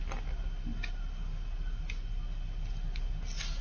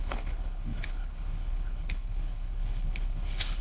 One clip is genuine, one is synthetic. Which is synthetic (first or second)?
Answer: second